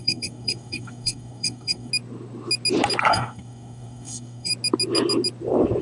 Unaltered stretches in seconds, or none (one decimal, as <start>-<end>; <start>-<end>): 1.9-3.1; 4.5-5.8